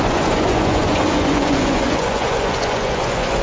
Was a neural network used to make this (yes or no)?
yes